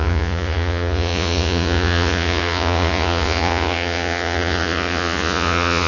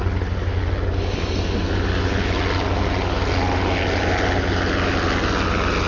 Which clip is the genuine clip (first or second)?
second